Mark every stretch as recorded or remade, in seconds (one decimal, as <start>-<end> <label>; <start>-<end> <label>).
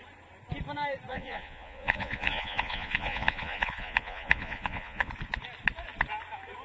0.0-1.1 recorded; 1.1-5.1 remade; 5.1-6.6 recorded